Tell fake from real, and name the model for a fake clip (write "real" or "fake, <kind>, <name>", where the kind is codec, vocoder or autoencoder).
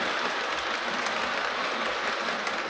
real